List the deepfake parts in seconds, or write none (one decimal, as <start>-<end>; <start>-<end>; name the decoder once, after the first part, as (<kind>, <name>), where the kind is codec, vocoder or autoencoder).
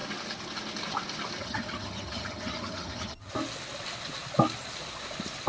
1.4-3.3 (vocoder, HiFi-GAN)